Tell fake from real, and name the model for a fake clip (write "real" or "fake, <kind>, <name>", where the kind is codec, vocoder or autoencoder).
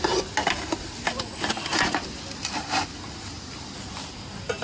real